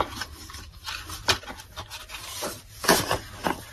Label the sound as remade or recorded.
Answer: recorded